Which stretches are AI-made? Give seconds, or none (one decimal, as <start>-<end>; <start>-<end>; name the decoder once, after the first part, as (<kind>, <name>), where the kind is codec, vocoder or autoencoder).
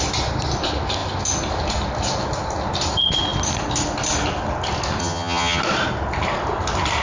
5.0-5.6 (vocoder, HiFi-GAN)